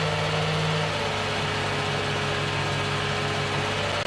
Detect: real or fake real